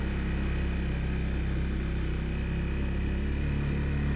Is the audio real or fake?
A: real